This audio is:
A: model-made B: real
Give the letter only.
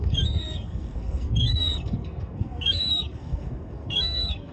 A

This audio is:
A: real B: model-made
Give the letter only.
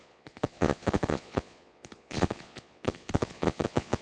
B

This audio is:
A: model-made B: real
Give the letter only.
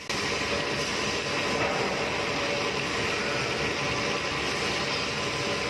B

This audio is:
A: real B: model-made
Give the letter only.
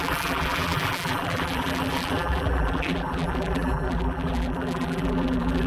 B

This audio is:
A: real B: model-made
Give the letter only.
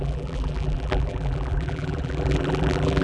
B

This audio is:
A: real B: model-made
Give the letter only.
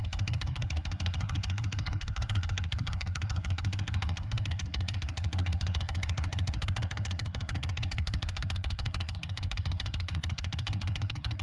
B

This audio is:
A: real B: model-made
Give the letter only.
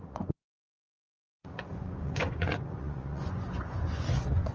B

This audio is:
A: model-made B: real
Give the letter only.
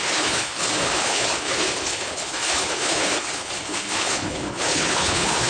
A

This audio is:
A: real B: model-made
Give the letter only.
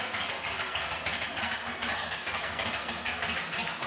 B